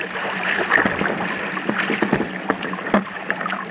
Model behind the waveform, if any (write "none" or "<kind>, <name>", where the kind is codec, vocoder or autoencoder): none